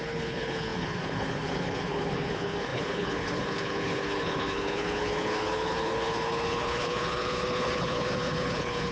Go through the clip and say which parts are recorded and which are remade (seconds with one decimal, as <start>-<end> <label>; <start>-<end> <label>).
0.0-8.9 remade